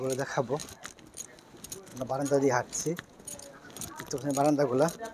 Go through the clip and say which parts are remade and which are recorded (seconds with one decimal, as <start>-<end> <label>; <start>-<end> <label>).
0.0-1.9 recorded; 1.9-3.5 remade; 3.5-5.1 recorded